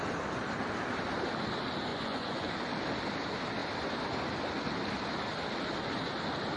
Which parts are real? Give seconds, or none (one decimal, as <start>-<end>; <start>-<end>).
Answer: 0.0-1.9; 2.5-6.6